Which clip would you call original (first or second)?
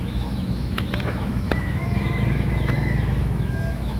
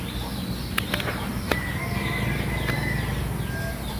second